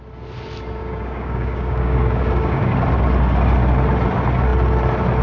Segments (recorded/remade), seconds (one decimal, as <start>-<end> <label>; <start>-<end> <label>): 0.0-0.8 recorded; 0.8-2.7 remade; 2.7-5.2 recorded